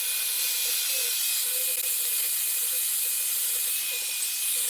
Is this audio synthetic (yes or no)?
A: no